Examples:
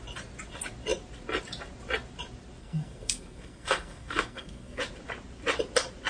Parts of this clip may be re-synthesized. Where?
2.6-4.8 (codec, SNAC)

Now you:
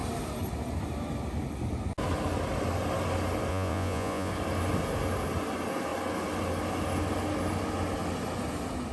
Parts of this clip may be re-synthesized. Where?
3.5-4.3 (vocoder, Vocos)

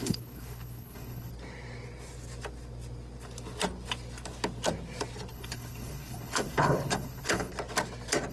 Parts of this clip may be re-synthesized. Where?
0.0-1.3 (codec, HILCodec); 5.3-7.5

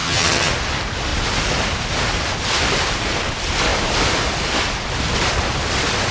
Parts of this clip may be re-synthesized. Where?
0.0-0.5 (vocoder, HiFi-GAN)

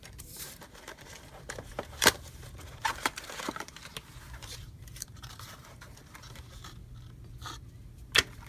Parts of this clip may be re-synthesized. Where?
0.0-3.9 (vocoder, BigVGAN v2); 4.4-5.3